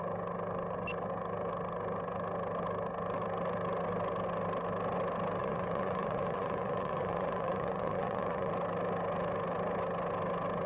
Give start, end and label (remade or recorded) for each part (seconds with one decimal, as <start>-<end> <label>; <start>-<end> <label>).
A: 0.0-5.4 recorded; 5.4-8.5 remade; 8.5-10.7 recorded